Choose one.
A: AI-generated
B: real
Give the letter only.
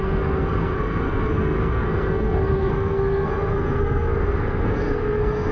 A